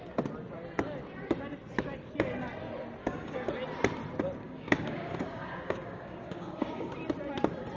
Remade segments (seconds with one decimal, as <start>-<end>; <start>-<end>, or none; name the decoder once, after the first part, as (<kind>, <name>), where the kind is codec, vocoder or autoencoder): 3.0-3.5 (codec, DAC); 4.4-6.9

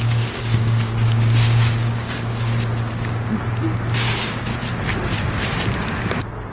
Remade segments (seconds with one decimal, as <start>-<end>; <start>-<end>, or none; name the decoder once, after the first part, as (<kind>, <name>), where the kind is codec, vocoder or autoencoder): 0.0-4.5 (codec, DAC)

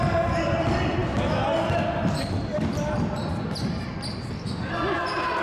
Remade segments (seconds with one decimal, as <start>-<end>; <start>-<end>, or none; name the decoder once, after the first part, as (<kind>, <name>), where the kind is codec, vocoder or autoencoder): none

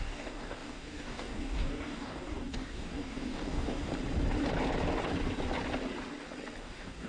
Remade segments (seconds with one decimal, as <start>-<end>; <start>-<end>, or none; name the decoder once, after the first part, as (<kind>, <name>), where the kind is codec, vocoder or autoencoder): 0.0-3.9 (codec, DAC); 6.6-7.1